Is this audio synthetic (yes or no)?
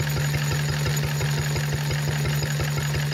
no